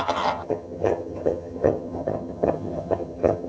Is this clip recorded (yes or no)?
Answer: no